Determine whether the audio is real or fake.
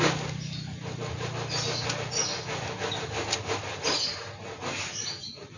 real